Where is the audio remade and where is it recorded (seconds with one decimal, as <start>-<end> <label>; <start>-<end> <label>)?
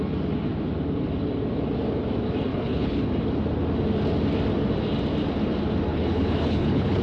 0.0-2.5 recorded; 2.5-3.1 remade; 3.1-5.9 recorded; 5.9-7.0 remade